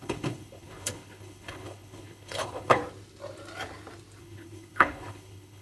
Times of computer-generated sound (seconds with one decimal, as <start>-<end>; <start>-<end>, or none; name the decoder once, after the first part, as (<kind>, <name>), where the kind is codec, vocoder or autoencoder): 0.0-2.8 (codec, HILCodec); 4.2-5.6